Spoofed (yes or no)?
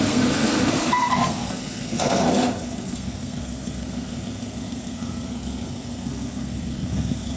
yes